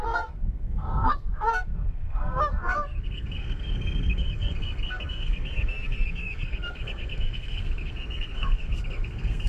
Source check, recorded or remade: remade